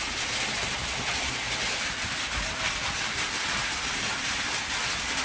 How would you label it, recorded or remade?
recorded